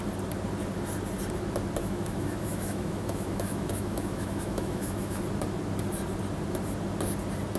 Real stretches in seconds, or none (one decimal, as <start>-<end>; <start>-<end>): 0.0-1.8; 5.2-7.6